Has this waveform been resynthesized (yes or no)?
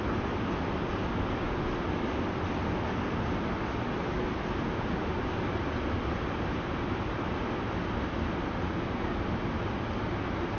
no